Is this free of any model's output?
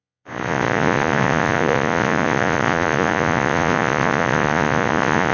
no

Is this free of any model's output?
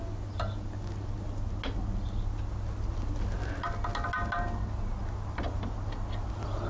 yes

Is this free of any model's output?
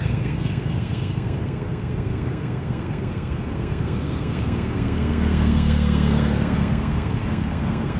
no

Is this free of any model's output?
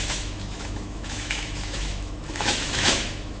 no